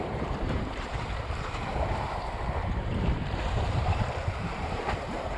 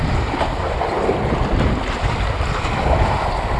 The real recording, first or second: second